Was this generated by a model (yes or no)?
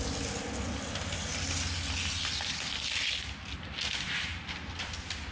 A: no